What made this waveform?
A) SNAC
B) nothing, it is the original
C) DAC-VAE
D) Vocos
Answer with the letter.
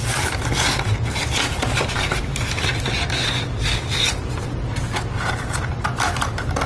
B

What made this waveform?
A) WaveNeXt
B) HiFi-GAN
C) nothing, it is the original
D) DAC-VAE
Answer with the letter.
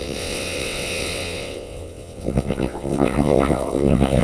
A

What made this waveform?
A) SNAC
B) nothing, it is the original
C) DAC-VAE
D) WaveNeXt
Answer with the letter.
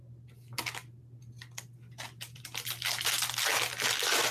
B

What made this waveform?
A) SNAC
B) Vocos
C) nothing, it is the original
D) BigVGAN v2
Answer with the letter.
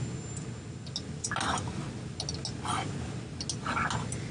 C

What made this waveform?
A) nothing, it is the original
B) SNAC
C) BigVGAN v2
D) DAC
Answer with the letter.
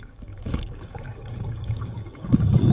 D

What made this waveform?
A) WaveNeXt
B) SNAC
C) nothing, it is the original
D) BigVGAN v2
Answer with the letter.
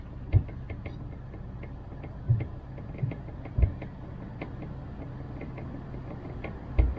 C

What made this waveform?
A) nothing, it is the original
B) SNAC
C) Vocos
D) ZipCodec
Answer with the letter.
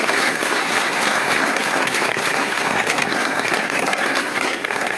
B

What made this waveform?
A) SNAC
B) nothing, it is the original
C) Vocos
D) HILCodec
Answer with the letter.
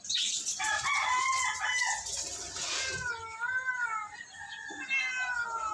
B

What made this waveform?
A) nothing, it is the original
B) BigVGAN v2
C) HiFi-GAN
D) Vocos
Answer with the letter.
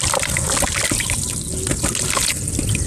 A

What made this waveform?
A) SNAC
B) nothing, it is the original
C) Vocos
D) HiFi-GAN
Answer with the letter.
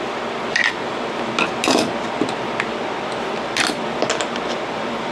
B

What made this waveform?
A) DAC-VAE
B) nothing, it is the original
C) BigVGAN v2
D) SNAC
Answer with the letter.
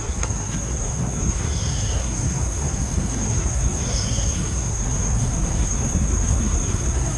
D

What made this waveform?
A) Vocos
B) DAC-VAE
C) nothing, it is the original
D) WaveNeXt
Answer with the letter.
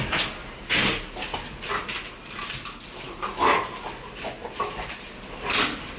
C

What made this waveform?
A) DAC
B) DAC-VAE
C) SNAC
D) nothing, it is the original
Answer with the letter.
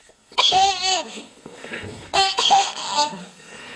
C